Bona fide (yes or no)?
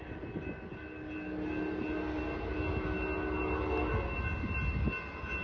yes